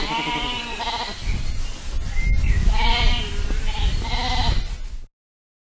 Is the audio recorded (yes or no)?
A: yes